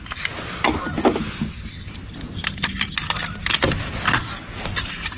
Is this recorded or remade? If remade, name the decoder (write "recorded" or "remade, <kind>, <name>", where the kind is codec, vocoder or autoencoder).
recorded